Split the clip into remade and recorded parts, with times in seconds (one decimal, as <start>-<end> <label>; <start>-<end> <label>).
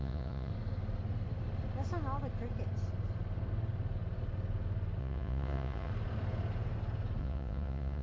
0.0-0.5 remade; 0.5-5.0 recorded; 5.0-5.9 remade; 5.9-7.2 recorded; 7.2-8.0 remade